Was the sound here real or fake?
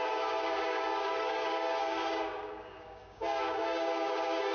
fake